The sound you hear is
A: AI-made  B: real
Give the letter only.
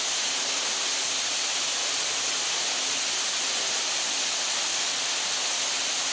B